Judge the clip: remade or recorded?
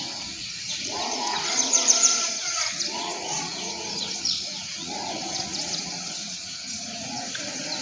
remade